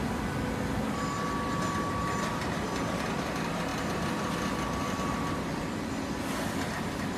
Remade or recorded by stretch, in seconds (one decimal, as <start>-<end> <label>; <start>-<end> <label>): 0.0-4.8 recorded; 4.8-5.4 remade; 5.4-7.2 recorded